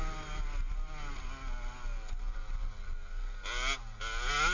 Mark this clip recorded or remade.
recorded